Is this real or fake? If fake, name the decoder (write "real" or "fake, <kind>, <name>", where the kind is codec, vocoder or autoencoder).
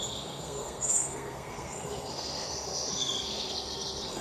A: fake, codec, SNAC